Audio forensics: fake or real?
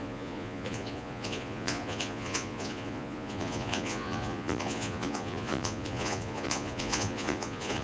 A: fake